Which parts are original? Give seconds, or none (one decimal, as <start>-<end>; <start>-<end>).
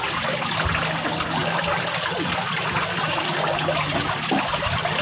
0.0-5.0